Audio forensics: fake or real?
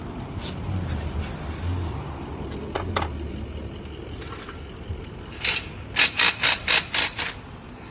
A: real